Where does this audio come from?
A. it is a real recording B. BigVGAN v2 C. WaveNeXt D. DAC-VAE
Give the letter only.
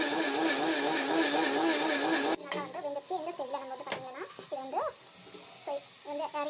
A